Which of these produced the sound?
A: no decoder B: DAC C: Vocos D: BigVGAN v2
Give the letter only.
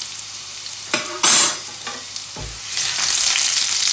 A